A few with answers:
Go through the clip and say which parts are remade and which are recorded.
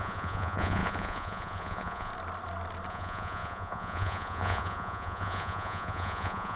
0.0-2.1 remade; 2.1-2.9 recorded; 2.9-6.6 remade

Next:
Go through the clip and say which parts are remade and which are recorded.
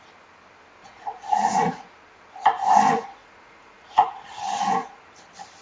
0.0-0.8 recorded; 0.8-1.9 remade; 1.9-2.9 recorded; 2.9-5.0 remade; 5.0-5.6 recorded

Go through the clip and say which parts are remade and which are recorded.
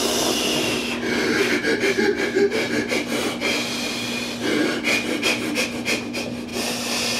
0.0-7.2 recorded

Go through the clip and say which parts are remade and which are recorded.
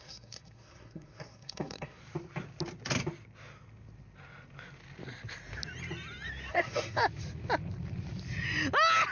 0.0-2.0 remade; 2.0-6.5 recorded; 6.5-7.0 remade; 7.0-9.1 recorded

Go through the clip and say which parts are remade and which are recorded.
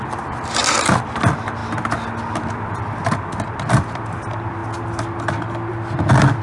0.0-1.6 remade; 1.6-2.5 recorded; 2.5-4.6 remade; 4.6-6.4 recorded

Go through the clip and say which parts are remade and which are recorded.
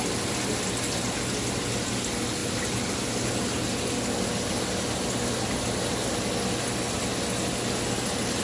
0.0-8.4 recorded